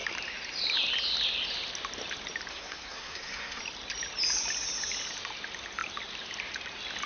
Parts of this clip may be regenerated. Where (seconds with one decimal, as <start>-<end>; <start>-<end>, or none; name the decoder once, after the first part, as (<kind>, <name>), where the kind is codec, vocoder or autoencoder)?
2.5-3.6 (codec, SNAC)